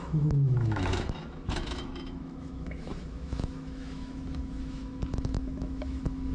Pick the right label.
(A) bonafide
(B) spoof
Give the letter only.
B